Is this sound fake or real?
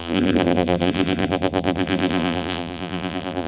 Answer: fake